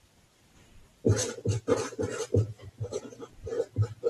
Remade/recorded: remade